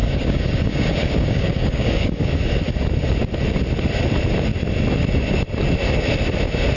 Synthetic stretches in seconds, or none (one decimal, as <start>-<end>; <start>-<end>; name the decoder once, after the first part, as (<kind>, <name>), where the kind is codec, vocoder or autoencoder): 0.0-2.6 (codec, DAC)